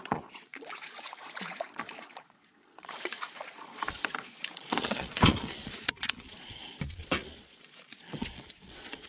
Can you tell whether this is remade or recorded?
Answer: remade